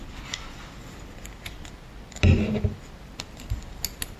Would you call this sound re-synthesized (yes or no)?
no